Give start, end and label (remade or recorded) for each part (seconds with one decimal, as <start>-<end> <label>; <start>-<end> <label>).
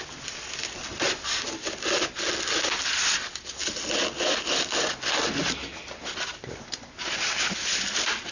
0.0-8.3 recorded